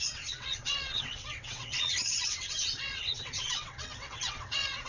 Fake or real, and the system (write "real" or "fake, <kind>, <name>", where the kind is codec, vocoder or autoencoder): fake, vocoder, WaveNeXt